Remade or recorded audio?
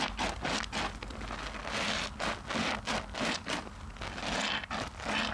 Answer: recorded